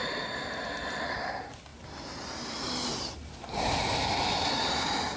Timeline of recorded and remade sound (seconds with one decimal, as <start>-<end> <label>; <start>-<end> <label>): 0.0-5.2 recorded